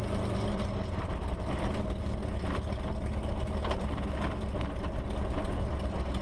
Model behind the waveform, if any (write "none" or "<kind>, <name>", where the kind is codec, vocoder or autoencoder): none